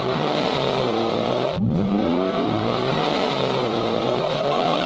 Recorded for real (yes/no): no